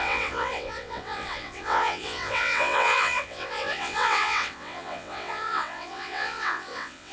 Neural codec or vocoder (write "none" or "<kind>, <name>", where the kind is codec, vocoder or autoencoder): vocoder, WaveNeXt